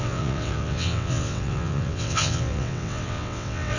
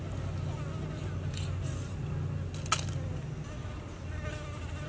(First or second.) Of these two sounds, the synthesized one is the first